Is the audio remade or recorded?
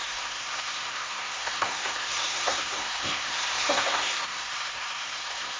remade